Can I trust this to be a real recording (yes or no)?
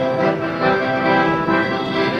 yes